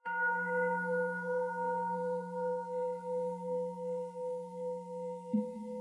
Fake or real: fake